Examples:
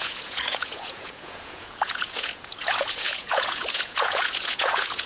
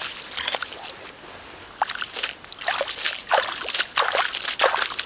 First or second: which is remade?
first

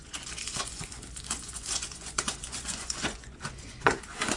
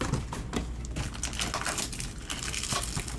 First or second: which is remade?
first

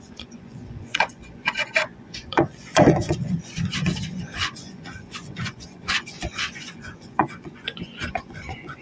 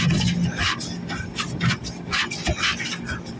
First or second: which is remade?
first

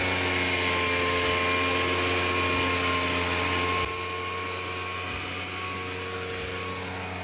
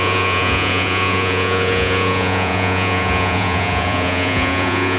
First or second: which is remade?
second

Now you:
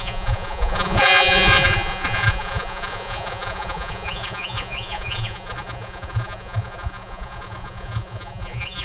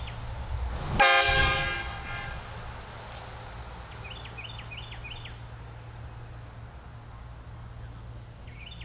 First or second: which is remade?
first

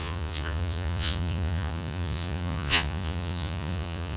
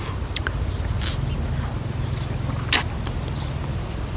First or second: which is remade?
first